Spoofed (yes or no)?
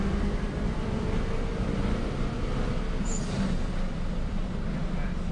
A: yes